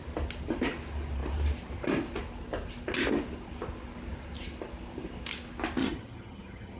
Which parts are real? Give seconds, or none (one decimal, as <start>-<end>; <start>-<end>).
0.0-5.8